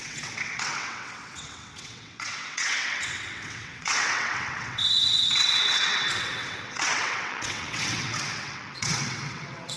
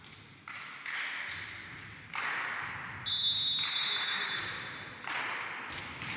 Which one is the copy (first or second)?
first